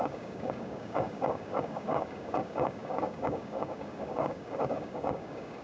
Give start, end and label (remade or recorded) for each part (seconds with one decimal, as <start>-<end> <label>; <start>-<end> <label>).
0.0-5.6 remade